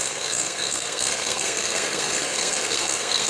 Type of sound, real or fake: fake